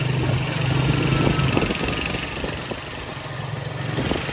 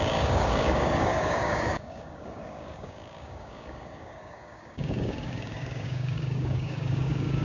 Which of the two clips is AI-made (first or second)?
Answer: second